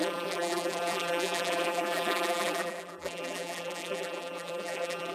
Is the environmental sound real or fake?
fake